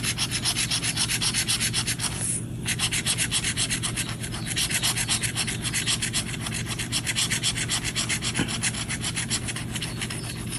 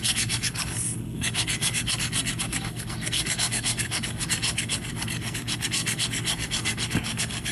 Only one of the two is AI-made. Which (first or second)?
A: second